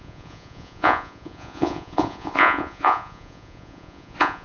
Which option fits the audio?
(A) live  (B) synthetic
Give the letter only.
B